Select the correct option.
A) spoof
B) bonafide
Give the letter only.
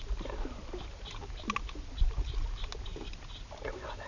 B